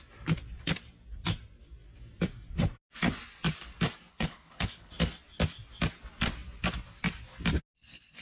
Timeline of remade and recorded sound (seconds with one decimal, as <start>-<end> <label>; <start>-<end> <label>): 0.0-4.1 recorded; 4.1-4.9 remade; 4.9-8.2 recorded